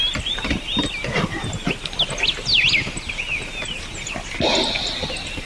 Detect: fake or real real